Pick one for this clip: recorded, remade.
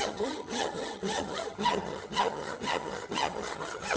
remade